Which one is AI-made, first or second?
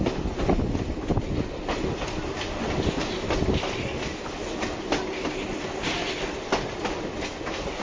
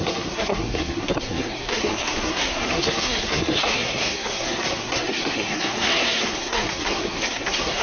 second